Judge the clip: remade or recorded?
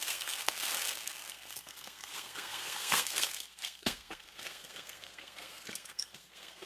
remade